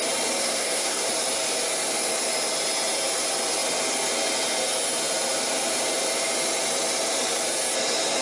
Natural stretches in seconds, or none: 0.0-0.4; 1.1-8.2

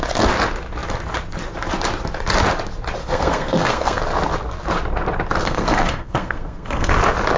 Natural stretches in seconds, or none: 0.0-3.0; 4.0-5.4; 6.9-7.4

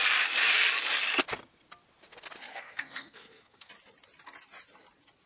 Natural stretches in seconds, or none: 0.0-2.5; 3.7-5.3

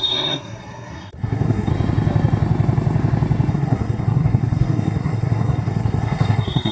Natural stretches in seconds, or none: 1.7-3.5

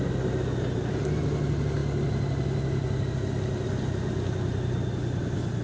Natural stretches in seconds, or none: 0.0-5.6